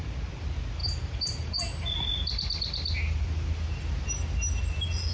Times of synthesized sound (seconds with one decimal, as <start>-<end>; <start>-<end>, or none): none